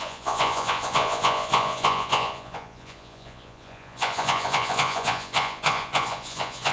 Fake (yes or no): yes